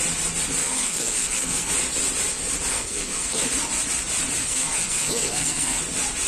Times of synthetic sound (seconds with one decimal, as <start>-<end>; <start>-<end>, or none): 0.6-1.7; 2.7-3.5; 4.4-5.8